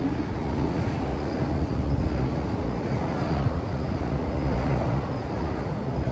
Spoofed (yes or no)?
yes